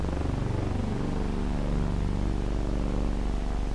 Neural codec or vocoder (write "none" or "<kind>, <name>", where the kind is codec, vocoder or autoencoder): none